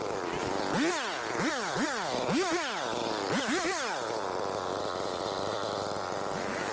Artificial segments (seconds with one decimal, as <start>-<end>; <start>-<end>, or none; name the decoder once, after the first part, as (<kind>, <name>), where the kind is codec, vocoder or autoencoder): none

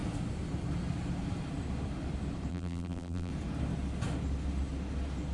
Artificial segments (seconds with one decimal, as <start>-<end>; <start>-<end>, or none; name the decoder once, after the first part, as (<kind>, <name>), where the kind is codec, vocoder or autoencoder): 2.5-3.3 (vocoder, BigVGAN v2)

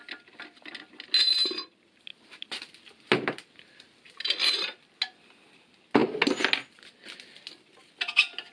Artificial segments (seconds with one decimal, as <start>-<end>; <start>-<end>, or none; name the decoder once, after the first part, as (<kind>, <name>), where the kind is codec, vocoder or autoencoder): none

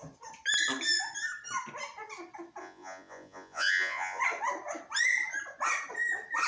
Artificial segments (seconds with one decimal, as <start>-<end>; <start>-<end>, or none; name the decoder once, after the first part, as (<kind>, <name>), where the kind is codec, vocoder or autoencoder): 2.6-4.2 (vocoder, Vocos)

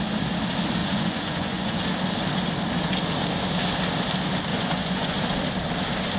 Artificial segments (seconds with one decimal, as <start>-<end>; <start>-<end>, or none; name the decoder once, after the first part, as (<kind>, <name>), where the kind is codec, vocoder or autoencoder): 0.8-1.8 (vocoder, Vocos); 4.5-5.2